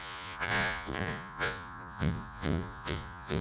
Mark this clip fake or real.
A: fake